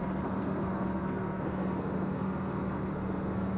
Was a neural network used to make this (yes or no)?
yes